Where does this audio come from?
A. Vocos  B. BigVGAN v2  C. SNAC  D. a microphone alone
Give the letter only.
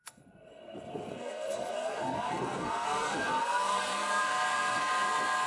C